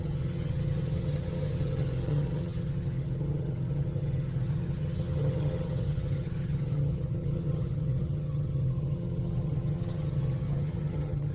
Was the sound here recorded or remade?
remade